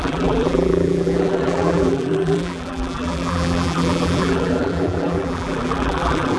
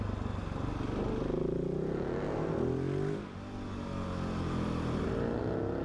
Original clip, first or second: second